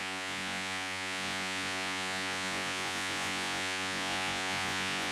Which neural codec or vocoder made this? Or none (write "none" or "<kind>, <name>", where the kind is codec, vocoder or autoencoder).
vocoder, Vocos